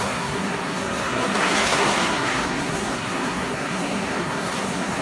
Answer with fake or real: fake